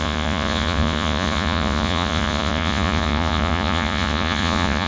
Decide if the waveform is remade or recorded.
remade